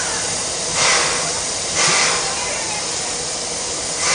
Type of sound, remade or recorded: remade